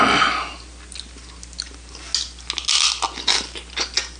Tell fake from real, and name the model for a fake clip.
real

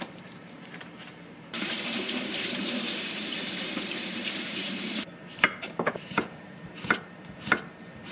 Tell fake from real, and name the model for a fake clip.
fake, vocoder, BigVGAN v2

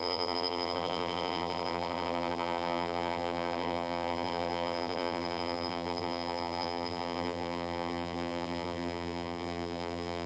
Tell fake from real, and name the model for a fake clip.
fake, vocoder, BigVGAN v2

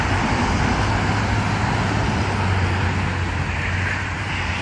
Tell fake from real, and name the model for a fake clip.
real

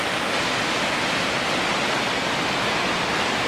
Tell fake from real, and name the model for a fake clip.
real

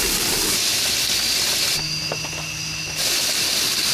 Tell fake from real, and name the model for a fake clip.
real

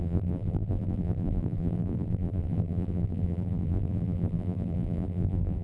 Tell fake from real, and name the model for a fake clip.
fake, vocoder, BigVGAN v2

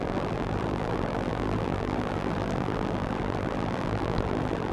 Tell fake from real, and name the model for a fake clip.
fake, vocoder, BigVGAN v2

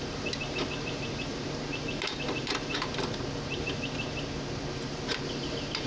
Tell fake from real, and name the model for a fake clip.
fake, vocoder, BigVGAN v2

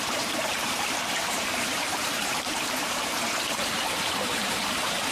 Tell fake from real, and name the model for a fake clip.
fake, vocoder, BigVGAN v2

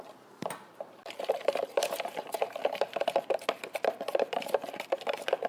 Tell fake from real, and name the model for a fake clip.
fake, vocoder, BigVGAN v2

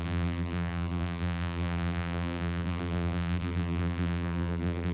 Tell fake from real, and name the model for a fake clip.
fake, vocoder, BigVGAN v2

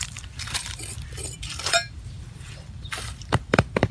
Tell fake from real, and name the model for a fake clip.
fake, vocoder, BigVGAN v2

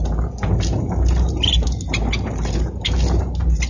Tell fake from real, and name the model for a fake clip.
real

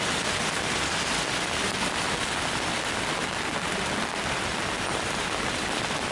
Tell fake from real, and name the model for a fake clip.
real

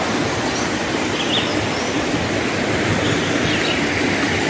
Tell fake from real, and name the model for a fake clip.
real